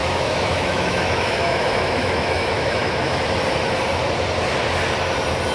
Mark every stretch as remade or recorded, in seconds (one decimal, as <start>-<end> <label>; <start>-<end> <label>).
0.0-3.3 remade; 3.3-5.5 recorded